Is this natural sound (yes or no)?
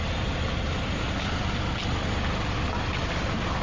yes